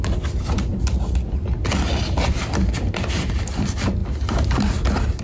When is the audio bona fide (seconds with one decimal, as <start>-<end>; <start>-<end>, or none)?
0.0-5.2